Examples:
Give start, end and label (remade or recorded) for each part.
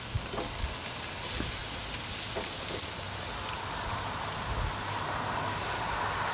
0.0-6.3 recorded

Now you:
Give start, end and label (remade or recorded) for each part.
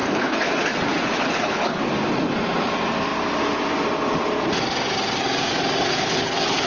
0.0-1.8 remade; 1.8-5.9 recorded; 5.9-6.7 remade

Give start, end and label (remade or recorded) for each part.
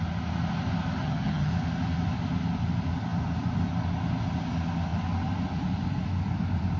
0.0-1.0 recorded; 1.0-1.5 remade; 1.5-6.8 recorded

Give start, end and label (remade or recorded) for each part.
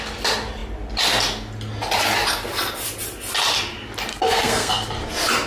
0.0-4.1 recorded; 4.1-4.7 remade; 4.7-5.5 recorded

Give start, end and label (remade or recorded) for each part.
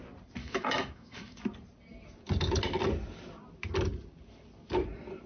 0.0-0.4 recorded; 0.4-1.4 remade; 1.4-5.3 recorded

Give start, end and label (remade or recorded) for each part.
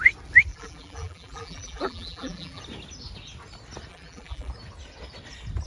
0.0-0.5 recorded; 0.5-2.6 remade; 2.6-3.9 recorded; 3.9-4.5 remade; 4.5-5.7 recorded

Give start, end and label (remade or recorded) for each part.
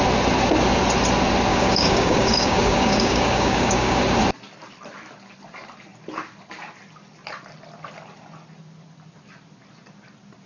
0.0-1.5 recorded; 1.5-4.0 remade; 4.0-10.5 recorded